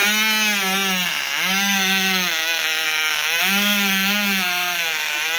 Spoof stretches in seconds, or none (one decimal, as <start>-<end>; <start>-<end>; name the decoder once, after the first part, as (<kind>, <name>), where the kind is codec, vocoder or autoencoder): 1.1-5.4 (autoencoder, DAC-VAE)